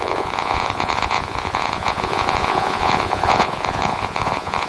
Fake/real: fake